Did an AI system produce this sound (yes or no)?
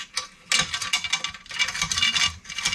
no